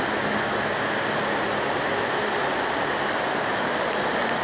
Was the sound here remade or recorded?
recorded